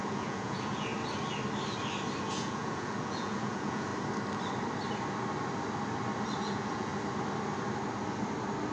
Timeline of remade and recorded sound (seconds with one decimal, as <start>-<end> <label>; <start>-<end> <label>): 0.0-0.9 remade; 0.9-2.2 recorded; 2.2-3.9 remade; 3.9-6.4 recorded; 6.4-6.9 remade; 6.9-8.7 recorded